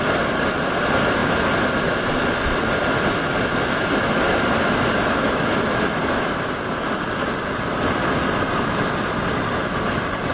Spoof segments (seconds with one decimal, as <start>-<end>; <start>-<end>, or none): none